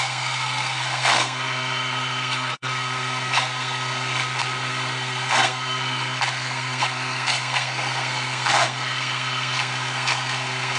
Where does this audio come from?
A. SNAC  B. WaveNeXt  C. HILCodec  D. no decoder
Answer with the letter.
A